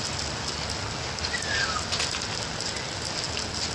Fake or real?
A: real